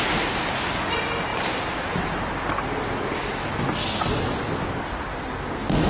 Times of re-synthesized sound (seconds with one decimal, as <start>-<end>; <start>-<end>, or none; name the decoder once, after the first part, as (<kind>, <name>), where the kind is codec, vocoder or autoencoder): none